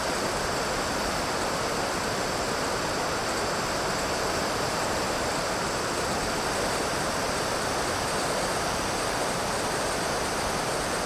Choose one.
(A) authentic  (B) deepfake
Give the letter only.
B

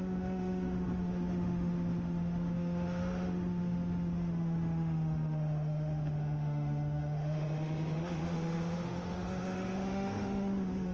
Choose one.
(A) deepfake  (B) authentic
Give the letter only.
A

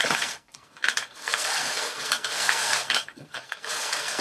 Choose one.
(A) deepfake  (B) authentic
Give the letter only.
A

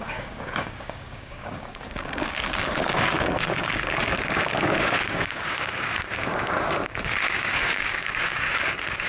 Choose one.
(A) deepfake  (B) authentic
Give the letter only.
A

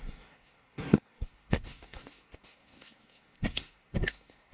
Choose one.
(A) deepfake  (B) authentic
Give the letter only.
A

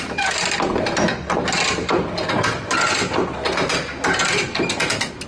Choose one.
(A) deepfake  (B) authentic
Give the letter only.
B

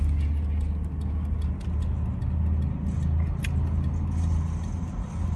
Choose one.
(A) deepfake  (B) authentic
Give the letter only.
B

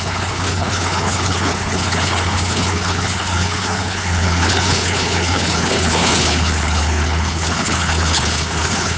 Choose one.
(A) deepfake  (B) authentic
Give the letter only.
A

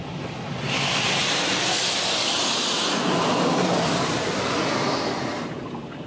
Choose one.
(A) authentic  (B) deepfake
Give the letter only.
A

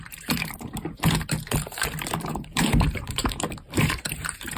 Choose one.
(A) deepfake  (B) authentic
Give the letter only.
A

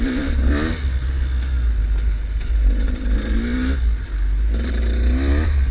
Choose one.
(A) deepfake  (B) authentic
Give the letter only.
B